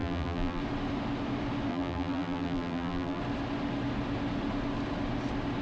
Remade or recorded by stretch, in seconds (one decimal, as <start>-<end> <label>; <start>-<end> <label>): 0.0-0.6 remade; 0.6-1.7 recorded; 1.7-3.2 remade; 3.2-5.6 recorded